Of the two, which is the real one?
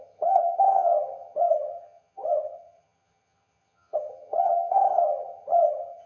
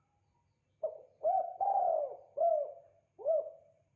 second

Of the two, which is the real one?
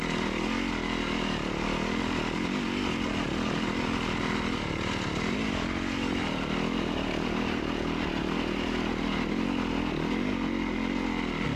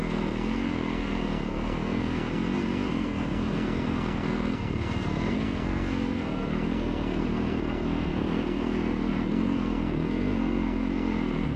first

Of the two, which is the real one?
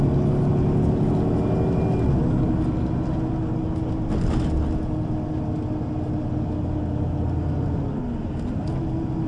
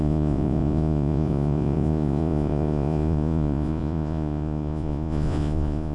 first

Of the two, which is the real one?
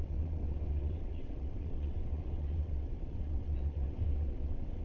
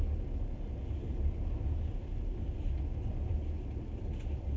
second